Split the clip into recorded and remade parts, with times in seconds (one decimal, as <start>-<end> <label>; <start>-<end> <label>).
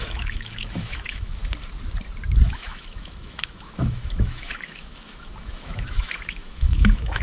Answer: 0.0-1.4 remade; 1.4-2.5 recorded; 2.5-7.2 remade